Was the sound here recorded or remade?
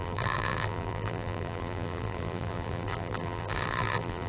remade